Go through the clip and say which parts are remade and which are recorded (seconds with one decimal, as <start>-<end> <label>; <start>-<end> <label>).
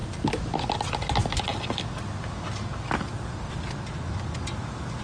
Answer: 0.0-5.0 recorded